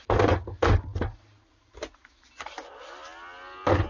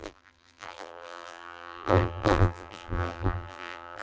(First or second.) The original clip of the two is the first